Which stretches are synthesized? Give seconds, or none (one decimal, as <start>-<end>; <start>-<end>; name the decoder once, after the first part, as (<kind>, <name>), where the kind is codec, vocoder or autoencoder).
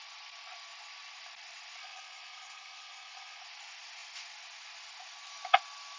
1.8-3.4 (codec, HILCodec)